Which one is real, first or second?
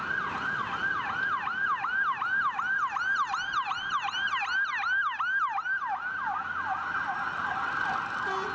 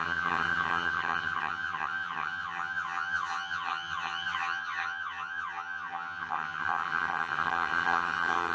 first